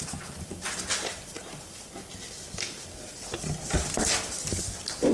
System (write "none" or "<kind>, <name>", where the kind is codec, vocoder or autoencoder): none